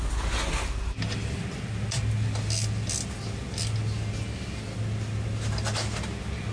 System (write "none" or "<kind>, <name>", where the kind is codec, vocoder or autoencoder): none